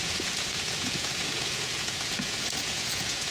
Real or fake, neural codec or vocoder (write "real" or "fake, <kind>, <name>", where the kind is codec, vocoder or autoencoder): fake, vocoder, Vocos